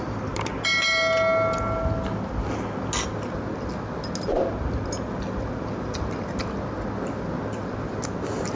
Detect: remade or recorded recorded